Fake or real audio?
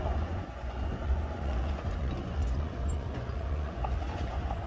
fake